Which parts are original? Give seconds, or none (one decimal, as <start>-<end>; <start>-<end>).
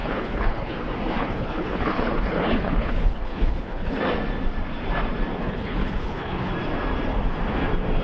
0.7-1.2; 4.0-5.4; 6.5-8.0